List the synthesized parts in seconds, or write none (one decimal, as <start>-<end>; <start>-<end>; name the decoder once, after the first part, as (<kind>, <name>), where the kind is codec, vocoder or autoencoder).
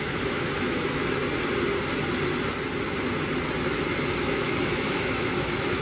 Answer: 0.0-1.0 (autoencoder, DAC-VAE); 4.1-5.8